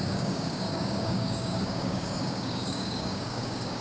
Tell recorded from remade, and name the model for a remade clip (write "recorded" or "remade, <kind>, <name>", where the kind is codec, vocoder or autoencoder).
remade, codec, DAC